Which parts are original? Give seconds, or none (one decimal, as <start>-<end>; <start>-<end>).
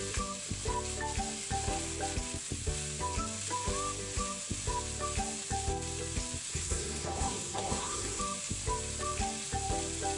0.0-6.5; 8.2-10.2